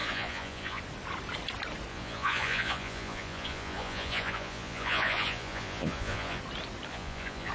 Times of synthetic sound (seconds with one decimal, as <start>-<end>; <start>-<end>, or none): 0.0-0.8; 1.9-6.4; 6.9-7.5